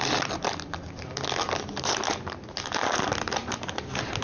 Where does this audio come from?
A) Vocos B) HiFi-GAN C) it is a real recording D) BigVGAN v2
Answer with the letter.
C